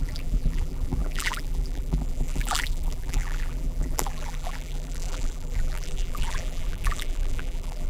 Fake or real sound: fake